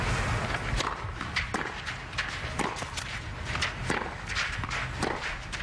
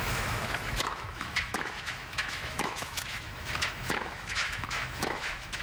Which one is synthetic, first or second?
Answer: second